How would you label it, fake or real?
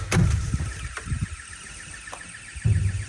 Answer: real